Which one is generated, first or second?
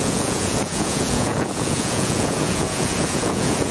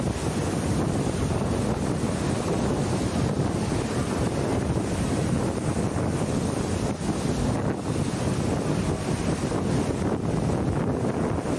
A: first